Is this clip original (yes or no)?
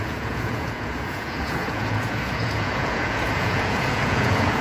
no